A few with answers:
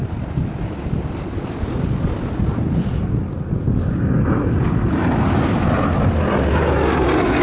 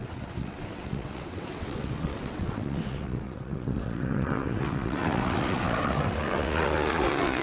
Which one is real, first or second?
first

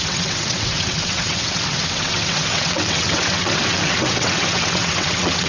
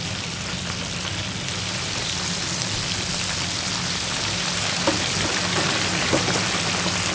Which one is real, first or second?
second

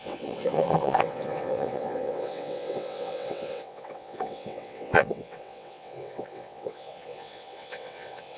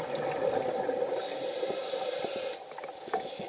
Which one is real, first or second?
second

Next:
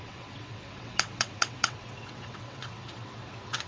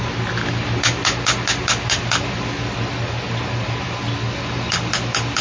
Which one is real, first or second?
second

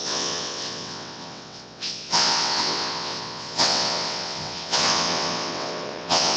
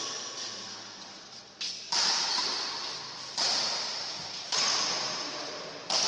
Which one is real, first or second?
second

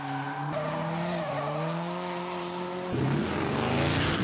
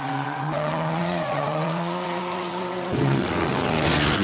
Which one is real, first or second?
first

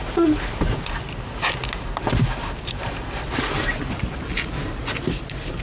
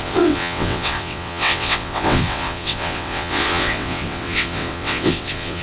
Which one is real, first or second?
first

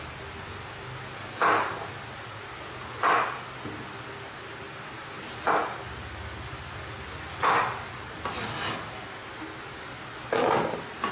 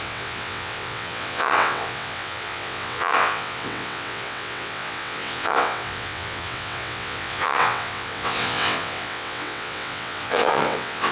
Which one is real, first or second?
first